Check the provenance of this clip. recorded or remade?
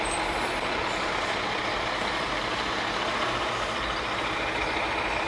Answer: remade